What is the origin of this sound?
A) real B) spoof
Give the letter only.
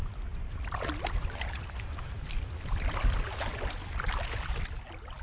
A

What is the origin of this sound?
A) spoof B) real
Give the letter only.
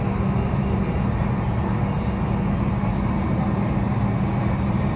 B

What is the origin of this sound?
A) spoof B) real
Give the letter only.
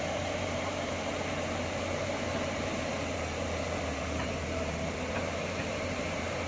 A